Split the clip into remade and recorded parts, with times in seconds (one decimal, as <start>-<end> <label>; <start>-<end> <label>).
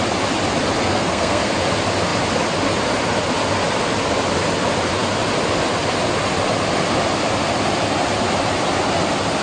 0.0-0.8 recorded; 0.8-1.5 remade; 1.5-9.4 recorded